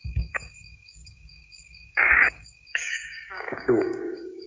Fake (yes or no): yes